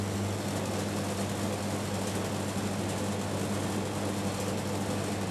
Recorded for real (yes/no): yes